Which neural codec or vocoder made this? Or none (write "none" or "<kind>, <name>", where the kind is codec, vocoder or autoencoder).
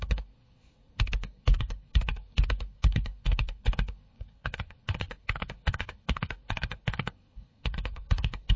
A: codec, SNAC